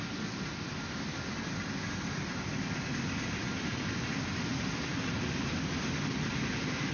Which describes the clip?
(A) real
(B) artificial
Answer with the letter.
A